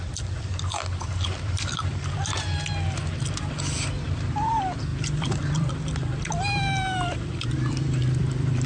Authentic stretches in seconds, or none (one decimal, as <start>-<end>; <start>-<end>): none